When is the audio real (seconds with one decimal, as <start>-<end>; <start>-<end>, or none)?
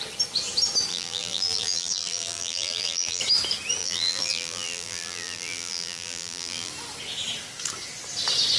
0.0-0.9; 3.2-3.8; 6.7-8.6